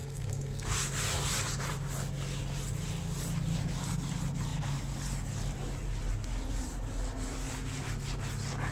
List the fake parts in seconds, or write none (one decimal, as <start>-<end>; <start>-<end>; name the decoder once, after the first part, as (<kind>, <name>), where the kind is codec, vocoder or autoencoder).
0.0-0.7 (codec, SNAC)